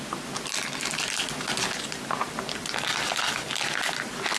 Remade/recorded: recorded